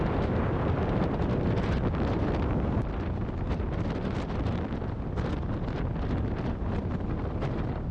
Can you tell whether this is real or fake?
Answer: real